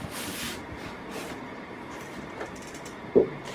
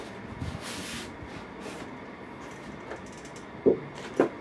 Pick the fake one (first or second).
first